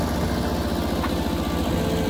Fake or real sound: real